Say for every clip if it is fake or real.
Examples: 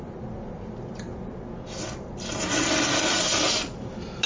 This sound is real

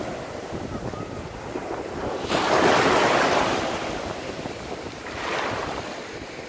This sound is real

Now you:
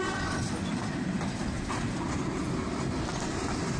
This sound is real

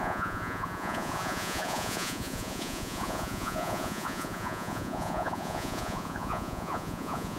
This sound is fake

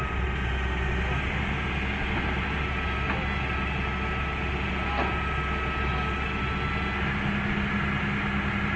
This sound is real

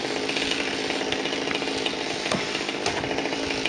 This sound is real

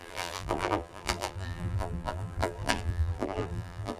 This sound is fake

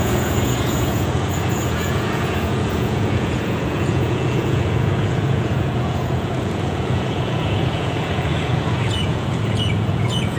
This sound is fake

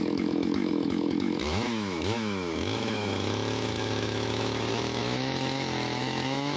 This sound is fake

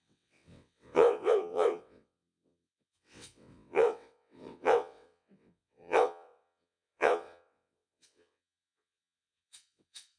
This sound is fake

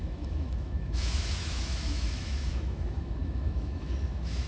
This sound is fake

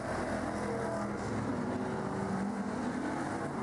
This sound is real